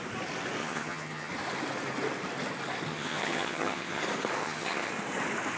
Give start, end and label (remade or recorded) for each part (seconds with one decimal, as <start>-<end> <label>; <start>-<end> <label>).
0.0-0.6 recorded; 0.6-1.3 remade; 1.3-2.9 recorded; 2.9-4.0 remade; 4.0-4.4 recorded; 4.4-4.9 remade; 4.9-5.6 recorded